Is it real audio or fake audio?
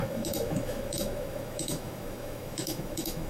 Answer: fake